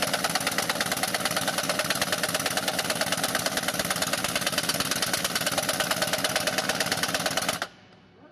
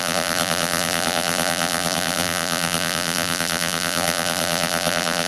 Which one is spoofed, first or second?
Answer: second